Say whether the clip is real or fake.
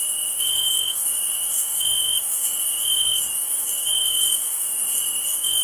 fake